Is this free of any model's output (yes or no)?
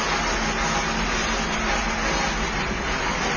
yes